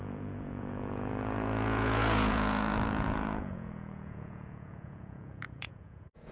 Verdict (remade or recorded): remade